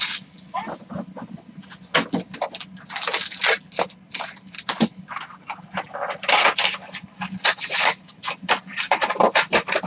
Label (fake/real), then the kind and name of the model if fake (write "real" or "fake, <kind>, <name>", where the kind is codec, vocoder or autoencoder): real